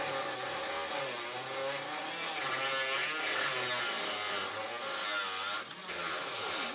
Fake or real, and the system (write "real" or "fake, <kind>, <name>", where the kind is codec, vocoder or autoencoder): real